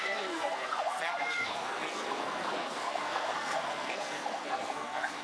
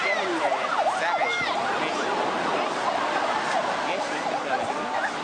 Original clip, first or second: second